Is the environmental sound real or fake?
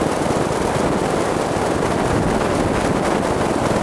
real